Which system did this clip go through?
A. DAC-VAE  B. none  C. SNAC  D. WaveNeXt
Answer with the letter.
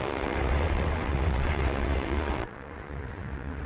D